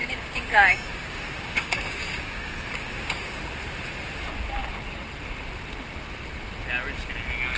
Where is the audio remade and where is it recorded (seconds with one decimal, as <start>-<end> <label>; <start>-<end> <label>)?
0.0-3.4 remade; 3.4-7.6 recorded